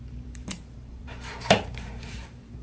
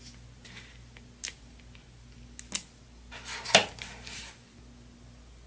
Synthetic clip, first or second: first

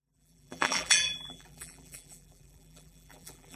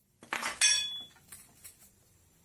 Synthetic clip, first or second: first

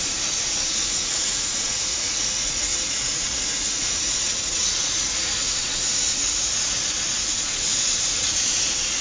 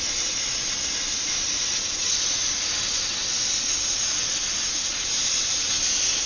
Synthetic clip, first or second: first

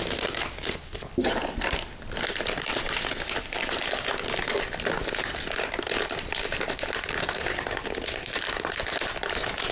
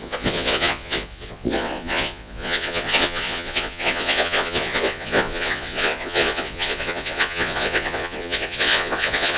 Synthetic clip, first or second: second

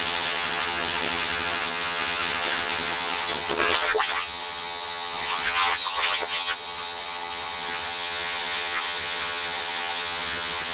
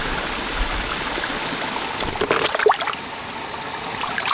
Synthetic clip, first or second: first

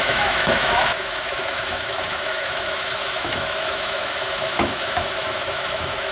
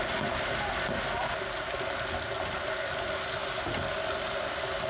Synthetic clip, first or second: first